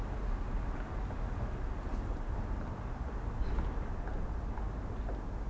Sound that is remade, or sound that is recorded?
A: recorded